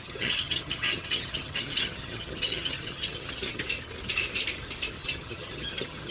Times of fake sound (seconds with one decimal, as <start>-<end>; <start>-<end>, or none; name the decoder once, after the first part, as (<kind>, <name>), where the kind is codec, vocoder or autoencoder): 0.0-3.6 (vocoder, HiFi-GAN); 5.0-6.1